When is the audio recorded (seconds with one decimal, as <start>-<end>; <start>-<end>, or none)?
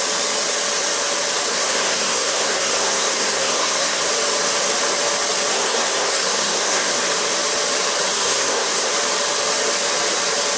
0.0-1.5; 4.0-5.5; 6.9-8.1; 8.9-10.6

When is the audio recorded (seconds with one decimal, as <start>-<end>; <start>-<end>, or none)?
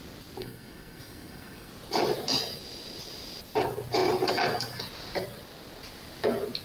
0.0-0.4; 1.7-6.6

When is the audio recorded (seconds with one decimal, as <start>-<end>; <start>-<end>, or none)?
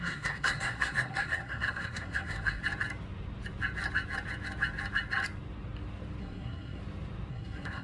2.6-6.2; 6.8-7.3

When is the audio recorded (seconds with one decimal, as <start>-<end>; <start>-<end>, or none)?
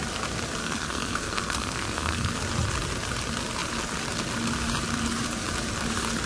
0.0-0.6; 2.4-6.3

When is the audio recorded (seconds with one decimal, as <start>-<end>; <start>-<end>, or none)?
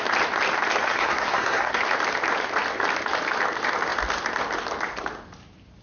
0.0-0.9; 1.8-5.8